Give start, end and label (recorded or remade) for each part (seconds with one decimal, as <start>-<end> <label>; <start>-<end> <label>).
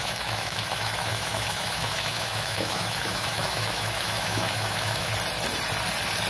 0.0-5.1 remade; 5.1-6.3 recorded